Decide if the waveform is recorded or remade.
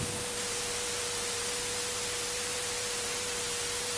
recorded